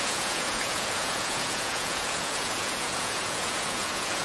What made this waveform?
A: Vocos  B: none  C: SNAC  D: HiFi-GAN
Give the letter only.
A